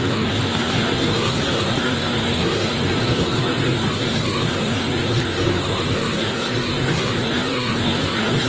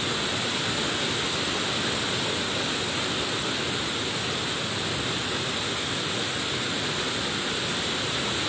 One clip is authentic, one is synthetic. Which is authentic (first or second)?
second